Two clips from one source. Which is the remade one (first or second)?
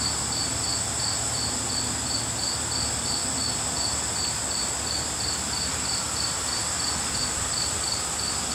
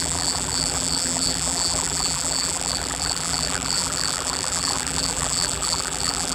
second